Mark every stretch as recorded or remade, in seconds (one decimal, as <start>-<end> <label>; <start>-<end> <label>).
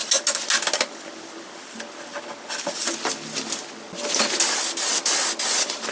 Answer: 0.0-5.9 recorded